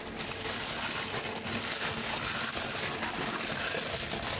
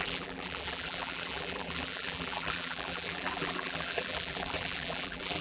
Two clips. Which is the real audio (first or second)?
first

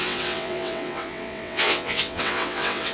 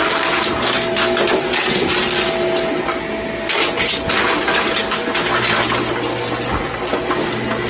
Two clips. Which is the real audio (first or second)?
second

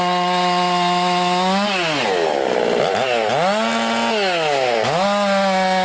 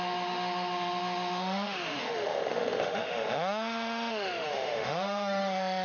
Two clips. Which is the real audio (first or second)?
first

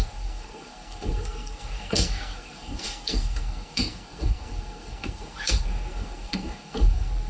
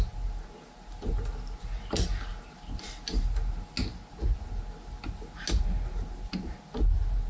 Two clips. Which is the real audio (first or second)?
second